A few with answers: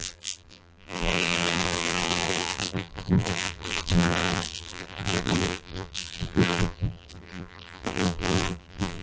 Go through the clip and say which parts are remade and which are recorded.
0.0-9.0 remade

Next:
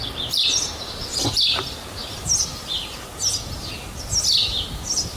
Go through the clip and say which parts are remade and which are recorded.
0.0-2.0 remade; 2.0-5.2 recorded